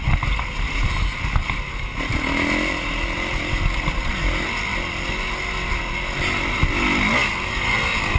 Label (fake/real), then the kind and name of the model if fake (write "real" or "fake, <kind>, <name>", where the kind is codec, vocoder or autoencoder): real